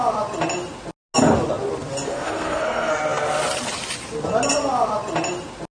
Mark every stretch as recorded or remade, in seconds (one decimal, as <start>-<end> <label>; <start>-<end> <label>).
0.0-2.1 recorded; 2.1-2.9 remade; 2.9-5.7 recorded